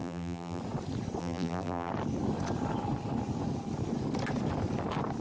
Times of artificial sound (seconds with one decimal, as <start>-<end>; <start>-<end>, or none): 0.0-0.6; 1.2-1.9